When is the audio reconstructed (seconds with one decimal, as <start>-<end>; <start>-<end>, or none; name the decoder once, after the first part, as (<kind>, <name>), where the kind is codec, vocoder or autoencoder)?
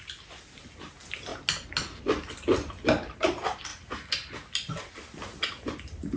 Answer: none